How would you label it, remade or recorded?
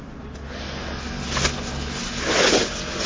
recorded